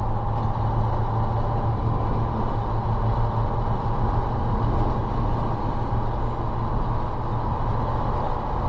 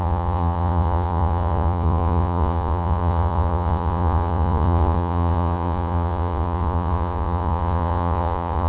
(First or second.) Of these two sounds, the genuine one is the first